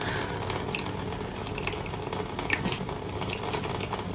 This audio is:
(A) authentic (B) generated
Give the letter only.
A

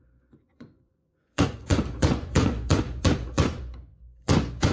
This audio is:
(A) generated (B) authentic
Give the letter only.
A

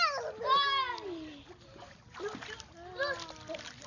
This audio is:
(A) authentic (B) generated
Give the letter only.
A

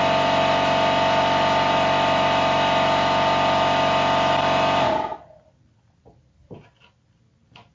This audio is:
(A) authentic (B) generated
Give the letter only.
A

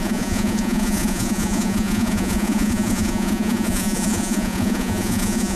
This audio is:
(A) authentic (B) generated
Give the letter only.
B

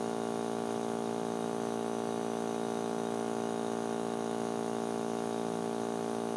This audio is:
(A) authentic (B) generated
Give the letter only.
B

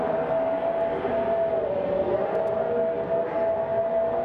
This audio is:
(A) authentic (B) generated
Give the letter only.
A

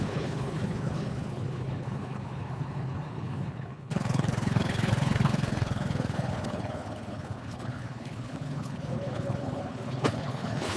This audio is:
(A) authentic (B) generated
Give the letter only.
B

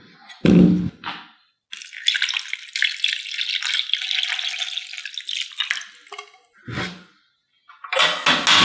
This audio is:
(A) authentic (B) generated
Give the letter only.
A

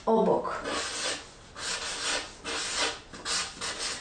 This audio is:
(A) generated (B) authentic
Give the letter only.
B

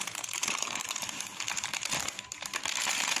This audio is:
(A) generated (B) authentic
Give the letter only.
A